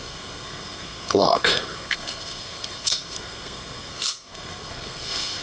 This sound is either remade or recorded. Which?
remade